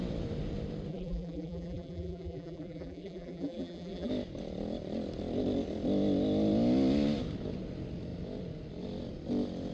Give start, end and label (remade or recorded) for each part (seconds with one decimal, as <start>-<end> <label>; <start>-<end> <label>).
0.0-0.9 recorded; 0.9-4.1 remade; 4.1-9.7 recorded